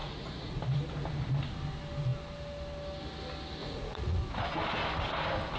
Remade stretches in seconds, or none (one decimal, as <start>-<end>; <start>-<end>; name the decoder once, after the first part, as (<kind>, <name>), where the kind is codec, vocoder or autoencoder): 0.0-0.6 (vocoder, Vocos); 3.6-4.2